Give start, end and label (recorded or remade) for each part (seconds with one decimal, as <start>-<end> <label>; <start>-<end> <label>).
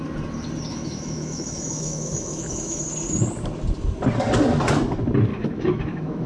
0.0-0.7 recorded; 0.7-2.8 remade; 2.8-5.3 recorded; 5.3-6.3 remade